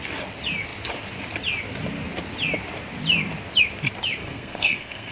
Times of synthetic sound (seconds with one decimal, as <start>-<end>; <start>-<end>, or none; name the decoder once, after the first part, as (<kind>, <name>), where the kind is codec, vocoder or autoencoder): 4.2-5.1 (codec, SNAC)